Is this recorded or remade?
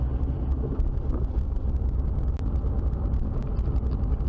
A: recorded